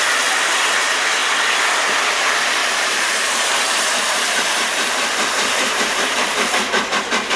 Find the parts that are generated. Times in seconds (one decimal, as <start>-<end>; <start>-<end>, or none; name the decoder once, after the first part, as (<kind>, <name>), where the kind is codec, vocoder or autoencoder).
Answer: 2.6-6.5 (vocoder, BigVGAN v2)